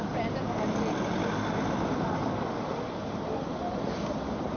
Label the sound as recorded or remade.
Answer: recorded